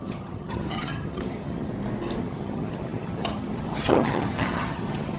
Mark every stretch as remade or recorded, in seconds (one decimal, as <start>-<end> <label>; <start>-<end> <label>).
0.0-1.7 remade; 1.7-2.2 recorded; 2.2-5.2 remade